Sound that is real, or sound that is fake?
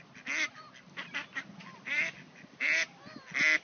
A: real